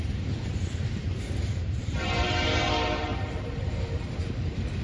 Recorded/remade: remade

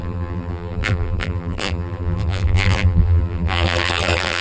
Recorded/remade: remade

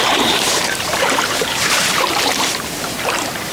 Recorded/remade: remade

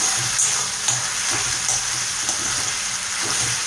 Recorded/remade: remade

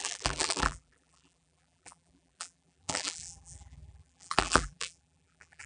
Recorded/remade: remade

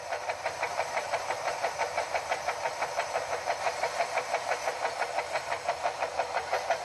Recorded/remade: recorded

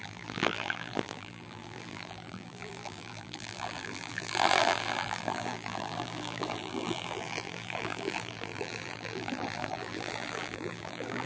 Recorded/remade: remade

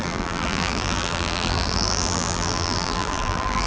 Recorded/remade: remade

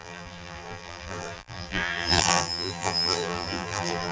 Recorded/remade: remade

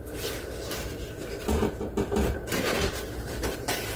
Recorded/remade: recorded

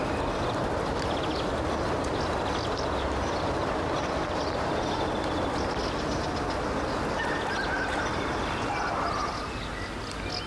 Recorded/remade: recorded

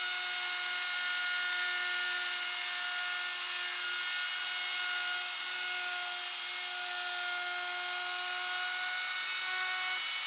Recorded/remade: recorded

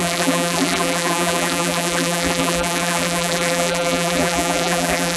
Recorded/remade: remade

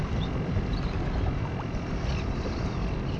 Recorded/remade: recorded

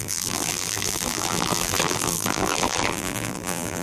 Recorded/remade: remade